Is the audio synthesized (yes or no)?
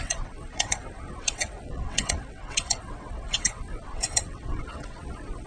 yes